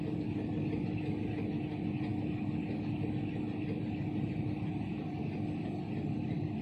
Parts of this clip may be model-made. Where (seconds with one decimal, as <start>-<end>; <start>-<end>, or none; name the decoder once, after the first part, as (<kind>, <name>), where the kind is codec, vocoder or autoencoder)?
none